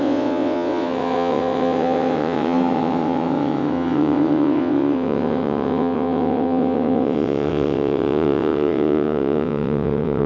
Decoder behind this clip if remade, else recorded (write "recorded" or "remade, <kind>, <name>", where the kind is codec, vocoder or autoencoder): remade, vocoder, WaveNeXt